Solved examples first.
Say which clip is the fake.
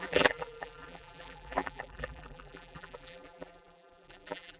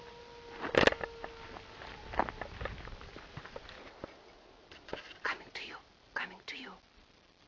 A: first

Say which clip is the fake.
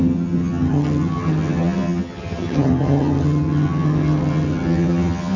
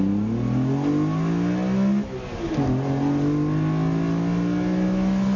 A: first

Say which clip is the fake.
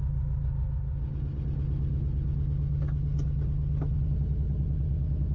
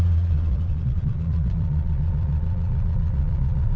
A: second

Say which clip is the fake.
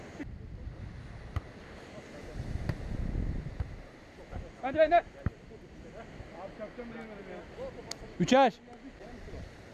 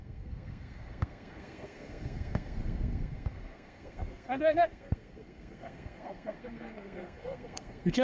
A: second